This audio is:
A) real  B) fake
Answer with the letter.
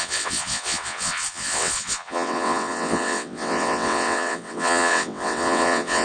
B